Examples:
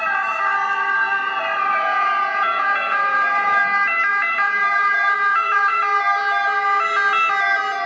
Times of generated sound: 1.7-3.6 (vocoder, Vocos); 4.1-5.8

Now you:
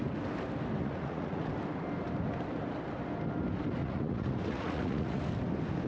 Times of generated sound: 0.8-1.5 (vocoder, Vocos); 3.8-5.2

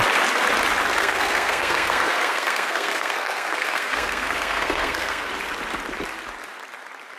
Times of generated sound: 1.0-5.3 (codec, SNAC)

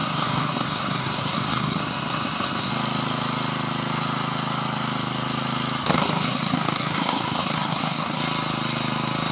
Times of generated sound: 0.0-2.7 (codec, SNAC); 5.9-8.2

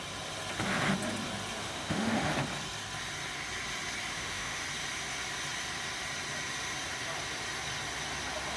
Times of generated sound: 1.6-2.3 (autoencoder, DAC-VAE); 4.1-4.6

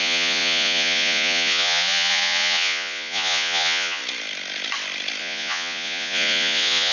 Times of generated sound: 0.0-4.0 (vocoder, Vocos); 5.2-6.9